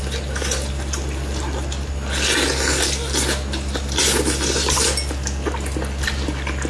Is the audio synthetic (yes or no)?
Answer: no